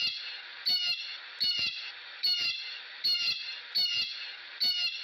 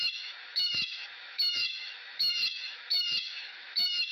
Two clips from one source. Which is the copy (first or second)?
second